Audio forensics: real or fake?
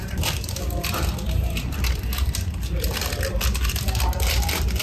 fake